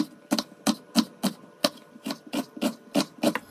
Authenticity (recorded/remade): recorded